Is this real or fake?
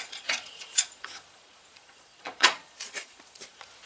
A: fake